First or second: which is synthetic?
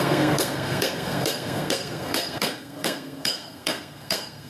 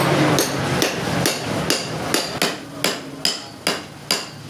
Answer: first